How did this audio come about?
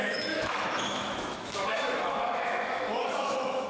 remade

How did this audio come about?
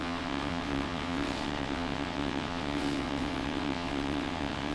remade